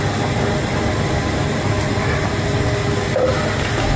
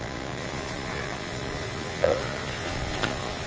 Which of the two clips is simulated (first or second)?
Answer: second